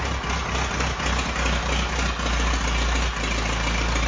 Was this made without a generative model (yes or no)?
yes